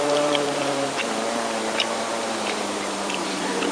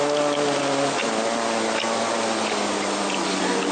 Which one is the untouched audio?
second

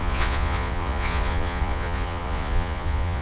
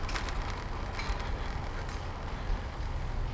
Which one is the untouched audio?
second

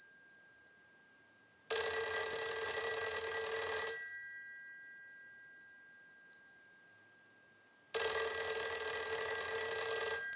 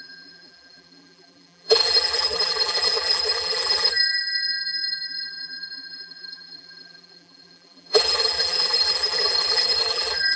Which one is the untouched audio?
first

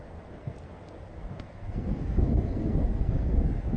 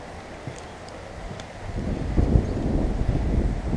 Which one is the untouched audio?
second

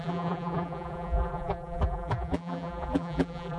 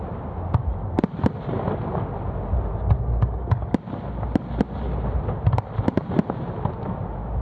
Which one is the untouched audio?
second